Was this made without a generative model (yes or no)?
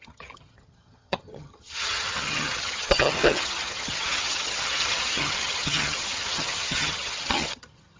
no